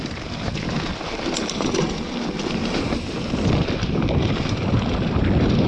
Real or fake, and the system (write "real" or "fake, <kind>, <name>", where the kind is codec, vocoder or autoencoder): real